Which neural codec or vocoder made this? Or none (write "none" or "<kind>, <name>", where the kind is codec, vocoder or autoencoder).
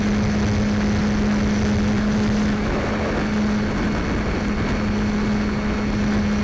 none